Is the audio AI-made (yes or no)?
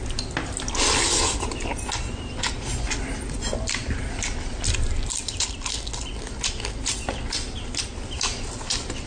no